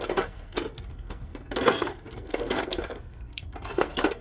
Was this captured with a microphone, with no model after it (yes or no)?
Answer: no